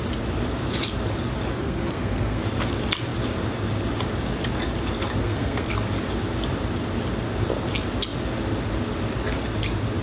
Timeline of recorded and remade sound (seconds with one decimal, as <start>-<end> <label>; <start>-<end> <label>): 0.0-1.6 recorded; 1.6-2.4 remade; 2.4-5.2 recorded; 5.2-5.7 remade; 5.7-10.0 recorded